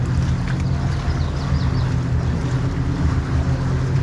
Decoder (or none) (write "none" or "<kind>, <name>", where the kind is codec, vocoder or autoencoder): none